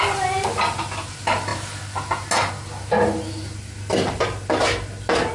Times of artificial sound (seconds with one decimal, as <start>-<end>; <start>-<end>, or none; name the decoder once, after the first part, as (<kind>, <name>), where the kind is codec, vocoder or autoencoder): none

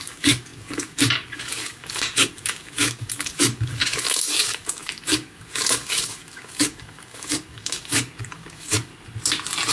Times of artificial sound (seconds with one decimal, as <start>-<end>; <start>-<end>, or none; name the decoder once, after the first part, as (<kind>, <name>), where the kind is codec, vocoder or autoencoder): 0.0-8.9 (codec, DAC)

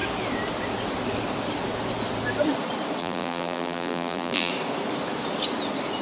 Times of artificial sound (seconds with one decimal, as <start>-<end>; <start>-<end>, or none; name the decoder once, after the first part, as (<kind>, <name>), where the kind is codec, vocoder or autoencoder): 3.0-4.5 (vocoder, BigVGAN v2)

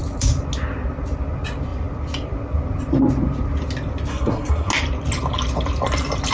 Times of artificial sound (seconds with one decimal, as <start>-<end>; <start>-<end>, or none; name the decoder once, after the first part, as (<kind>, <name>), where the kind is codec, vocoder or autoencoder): 4.1-4.7 (codec, SNAC)

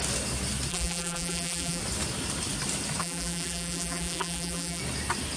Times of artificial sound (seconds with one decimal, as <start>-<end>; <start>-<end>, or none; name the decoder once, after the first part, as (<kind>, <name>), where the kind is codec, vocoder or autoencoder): 0.7-1.8 (vocoder, BigVGAN v2); 3.0-4.8